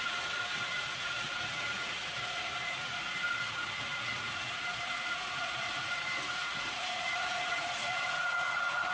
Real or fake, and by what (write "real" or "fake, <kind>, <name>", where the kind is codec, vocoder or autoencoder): fake, vocoder, Vocos